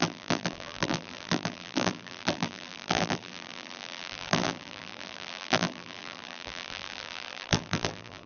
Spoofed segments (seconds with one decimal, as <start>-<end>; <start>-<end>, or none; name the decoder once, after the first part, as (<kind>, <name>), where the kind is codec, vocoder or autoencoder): 0.0-8.3 (vocoder, BigVGAN v2)